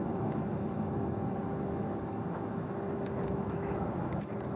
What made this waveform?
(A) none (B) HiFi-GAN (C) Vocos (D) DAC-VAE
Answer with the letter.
D